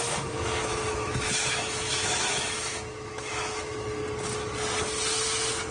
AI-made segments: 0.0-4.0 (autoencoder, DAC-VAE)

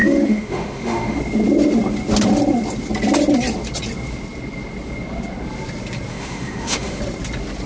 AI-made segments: 0.0-1.2 (autoencoder, DAC-VAE); 6.1-7.0

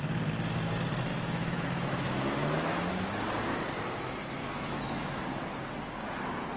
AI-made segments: 1.1-3.1 (autoencoder, DAC-VAE); 4.4-5.2

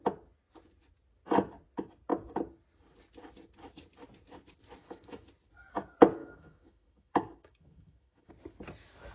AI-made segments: 4.8-5.3 (autoencoder, DAC-VAE); 6.2-8.3

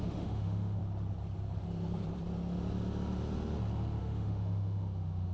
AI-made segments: 0.0-0.8 (autoencoder, DAC-VAE); 4.0-5.3

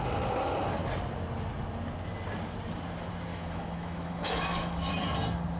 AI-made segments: 3.3-5.0 (autoencoder, DAC-VAE)

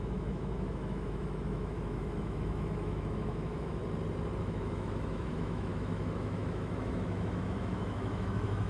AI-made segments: 0.0-3.8 (autoencoder, DAC-VAE); 4.4-8.7